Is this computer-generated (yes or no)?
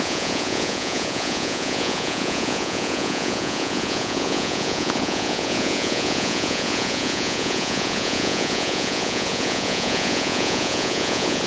yes